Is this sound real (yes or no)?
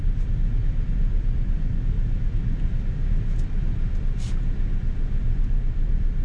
yes